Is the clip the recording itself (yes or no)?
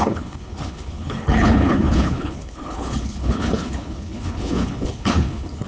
no